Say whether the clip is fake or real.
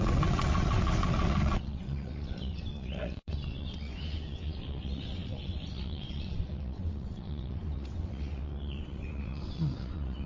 fake